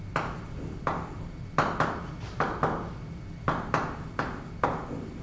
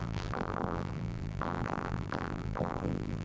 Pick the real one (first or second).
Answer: first